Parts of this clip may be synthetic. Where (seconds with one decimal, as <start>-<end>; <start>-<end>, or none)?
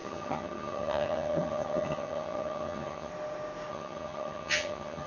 0.0-3.1; 3.7-5.1